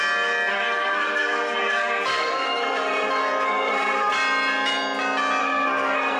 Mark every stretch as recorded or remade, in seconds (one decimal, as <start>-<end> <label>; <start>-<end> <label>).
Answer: 0.0-0.5 recorded; 0.5-4.1 remade; 4.1-5.4 recorded; 5.4-6.2 remade

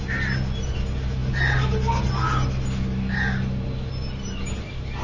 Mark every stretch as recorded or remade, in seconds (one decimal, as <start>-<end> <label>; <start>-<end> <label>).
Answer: 0.0-5.0 recorded